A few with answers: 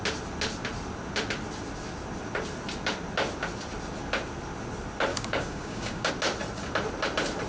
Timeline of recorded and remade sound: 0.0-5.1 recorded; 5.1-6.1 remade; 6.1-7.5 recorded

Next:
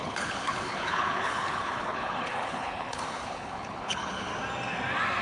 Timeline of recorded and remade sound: 0.0-4.3 remade; 4.3-5.2 recorded

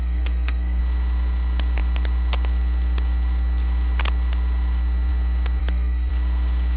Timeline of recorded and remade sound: 0.0-0.8 remade; 0.8-5.6 recorded; 5.6-6.1 remade; 6.1-6.8 recorded

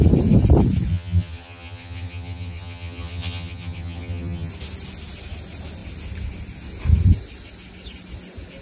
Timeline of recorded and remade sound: 0.0-0.9 recorded; 0.9-4.5 remade; 4.5-8.6 recorded

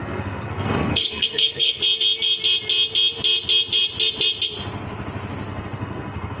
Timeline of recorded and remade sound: 0.0-1.8 remade; 1.8-5.5 recorded; 5.5-6.4 remade

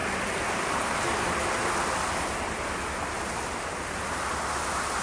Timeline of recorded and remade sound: 0.0-5.0 recorded

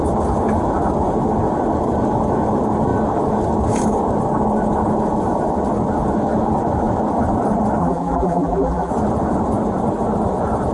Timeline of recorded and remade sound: 0.0-7.8 recorded; 7.8-8.9 remade; 8.9-10.7 recorded

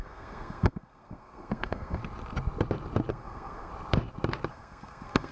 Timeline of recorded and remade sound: 0.0-2.0 remade; 2.0-3.1 recorded; 3.1-3.7 remade; 3.7-4.5 recorded; 4.5-5.3 remade